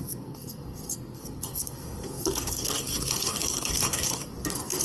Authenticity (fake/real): fake